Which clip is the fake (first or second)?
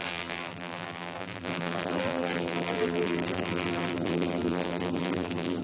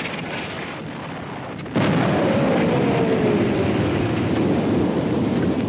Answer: first